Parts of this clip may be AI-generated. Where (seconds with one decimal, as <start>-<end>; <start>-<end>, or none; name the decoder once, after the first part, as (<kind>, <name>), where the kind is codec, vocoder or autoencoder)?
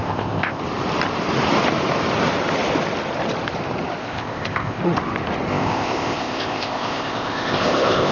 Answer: 0.0-0.6 (codec, ZipCodec); 4.0-4.8; 5.5-8.1